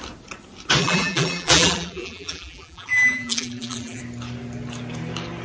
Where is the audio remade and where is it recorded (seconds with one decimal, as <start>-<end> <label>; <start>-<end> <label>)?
0.0-0.8 recorded; 0.8-4.0 remade; 4.0-5.4 recorded